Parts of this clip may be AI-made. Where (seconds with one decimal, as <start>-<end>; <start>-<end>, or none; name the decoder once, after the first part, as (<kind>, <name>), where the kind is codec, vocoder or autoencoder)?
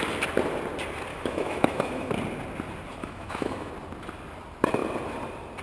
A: 1.1-2.1 (autoencoder, DAC-VAE); 3.0-3.7